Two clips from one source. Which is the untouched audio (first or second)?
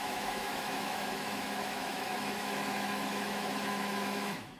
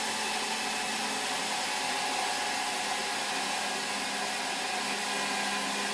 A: second